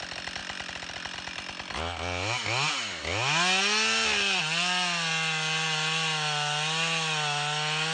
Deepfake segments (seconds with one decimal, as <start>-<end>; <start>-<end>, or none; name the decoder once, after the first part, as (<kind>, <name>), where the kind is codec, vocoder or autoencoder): none

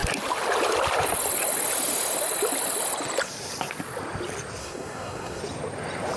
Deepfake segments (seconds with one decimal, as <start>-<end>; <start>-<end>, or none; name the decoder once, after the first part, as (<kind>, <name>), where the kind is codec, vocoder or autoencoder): 4.6-5.4 (codec, SNAC)

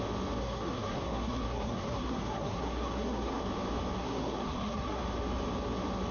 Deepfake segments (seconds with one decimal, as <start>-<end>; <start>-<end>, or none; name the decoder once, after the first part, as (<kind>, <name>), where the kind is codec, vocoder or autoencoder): 0.4-3.4 (codec, SNAC); 4.0-5.0